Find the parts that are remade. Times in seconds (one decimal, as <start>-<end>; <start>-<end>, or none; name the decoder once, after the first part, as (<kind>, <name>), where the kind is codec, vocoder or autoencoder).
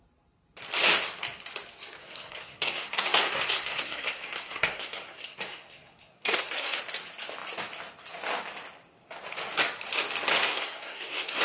2.0-6.8 (codec, SNAC); 10.4-11.4